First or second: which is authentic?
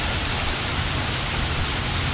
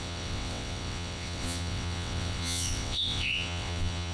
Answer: first